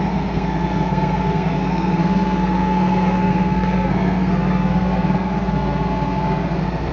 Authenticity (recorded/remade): remade